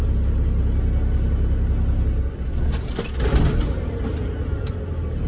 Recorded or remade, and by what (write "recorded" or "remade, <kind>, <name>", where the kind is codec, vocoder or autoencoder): recorded